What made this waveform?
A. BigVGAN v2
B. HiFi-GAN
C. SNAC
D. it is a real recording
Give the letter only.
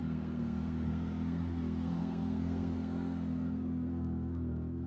C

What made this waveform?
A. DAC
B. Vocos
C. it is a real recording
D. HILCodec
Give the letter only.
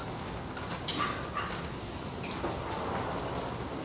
C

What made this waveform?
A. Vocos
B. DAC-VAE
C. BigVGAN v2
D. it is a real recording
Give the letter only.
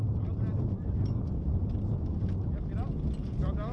D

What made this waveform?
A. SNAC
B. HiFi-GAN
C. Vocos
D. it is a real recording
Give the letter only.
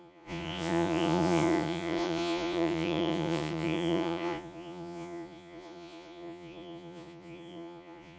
C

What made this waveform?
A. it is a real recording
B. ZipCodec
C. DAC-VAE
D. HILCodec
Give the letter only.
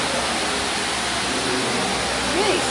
A